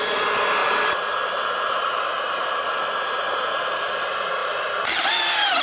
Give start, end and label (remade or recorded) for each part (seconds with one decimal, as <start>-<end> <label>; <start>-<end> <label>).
0.0-0.6 recorded; 0.6-2.6 remade; 2.6-4.4 recorded; 4.4-4.9 remade; 4.9-5.6 recorded